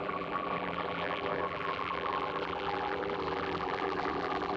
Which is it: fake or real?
fake